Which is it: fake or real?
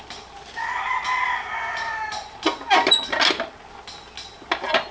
real